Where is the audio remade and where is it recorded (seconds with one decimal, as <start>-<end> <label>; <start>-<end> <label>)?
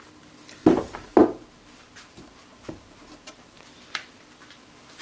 0.0-0.6 recorded; 0.6-1.1 remade; 1.1-5.0 recorded